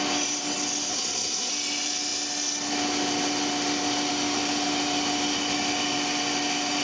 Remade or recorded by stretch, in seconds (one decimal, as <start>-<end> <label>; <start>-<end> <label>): 0.0-0.9 recorded; 0.9-1.5 remade; 1.5-6.8 recorded